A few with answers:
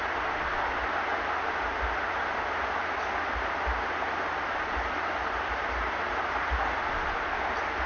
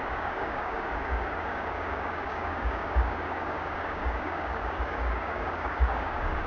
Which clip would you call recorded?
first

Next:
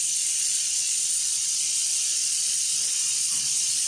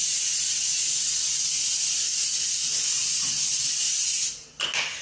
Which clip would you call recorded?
second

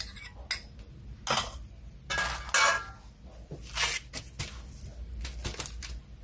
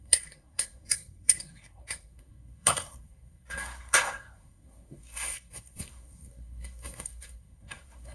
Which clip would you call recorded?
first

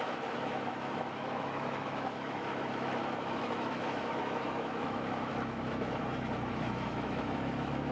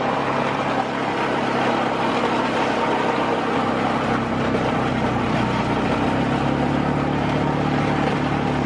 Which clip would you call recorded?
second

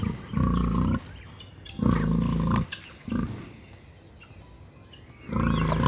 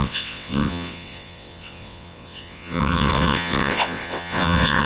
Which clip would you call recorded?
first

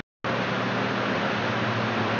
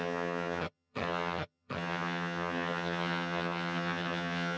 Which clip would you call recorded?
first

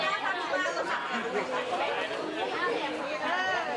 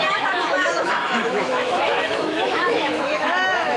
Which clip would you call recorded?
first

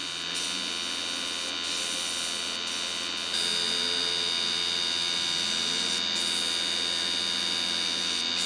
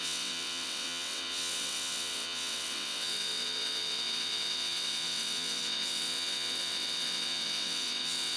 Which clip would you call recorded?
first